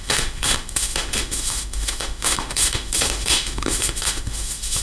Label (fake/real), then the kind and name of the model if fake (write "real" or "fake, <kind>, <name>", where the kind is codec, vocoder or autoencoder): fake, autoencoder, DAC-VAE